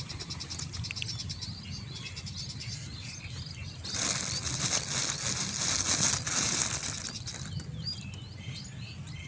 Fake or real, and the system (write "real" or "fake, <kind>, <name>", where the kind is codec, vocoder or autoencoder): real